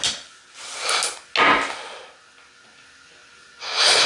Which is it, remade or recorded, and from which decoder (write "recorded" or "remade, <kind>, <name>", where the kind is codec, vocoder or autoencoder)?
recorded